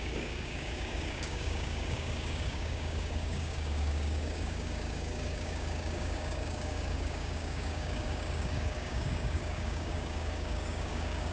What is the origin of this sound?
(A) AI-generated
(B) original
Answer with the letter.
A